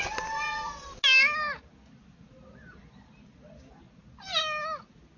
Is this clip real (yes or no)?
yes